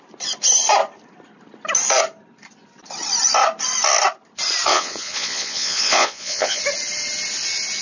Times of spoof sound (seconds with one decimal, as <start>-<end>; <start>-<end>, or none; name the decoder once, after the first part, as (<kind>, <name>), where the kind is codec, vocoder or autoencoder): 4.7-6.6 (vocoder, Vocos)